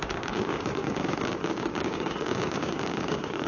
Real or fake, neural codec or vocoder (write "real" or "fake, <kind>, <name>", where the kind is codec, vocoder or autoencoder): fake, codec, DAC